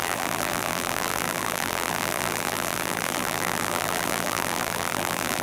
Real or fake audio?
fake